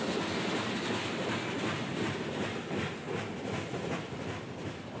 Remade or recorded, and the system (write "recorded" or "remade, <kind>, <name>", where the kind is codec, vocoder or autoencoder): recorded